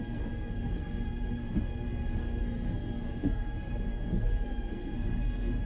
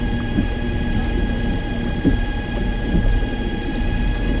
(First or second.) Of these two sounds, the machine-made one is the first